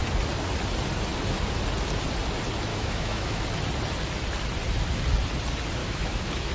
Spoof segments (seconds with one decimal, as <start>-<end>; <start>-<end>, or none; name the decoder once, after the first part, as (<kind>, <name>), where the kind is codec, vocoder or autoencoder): 2.7-3.4 (autoencoder, DAC-VAE); 5.8-6.5